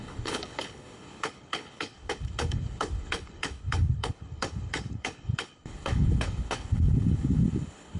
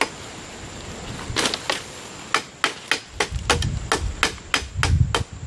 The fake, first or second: first